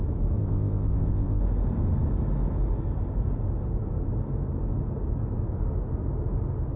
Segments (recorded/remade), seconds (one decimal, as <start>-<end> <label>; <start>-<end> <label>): 0.0-0.4 recorded; 0.4-1.4 remade; 1.4-6.8 recorded